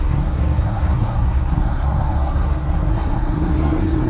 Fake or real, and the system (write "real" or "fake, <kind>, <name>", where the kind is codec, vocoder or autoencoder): fake, codec, SNAC